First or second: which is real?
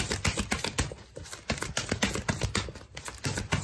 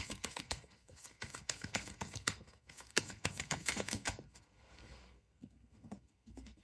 first